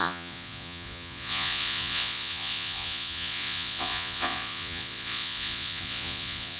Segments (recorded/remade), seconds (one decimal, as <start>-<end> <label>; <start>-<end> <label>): 0.0-6.6 remade